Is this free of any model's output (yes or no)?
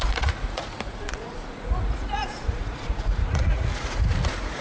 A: no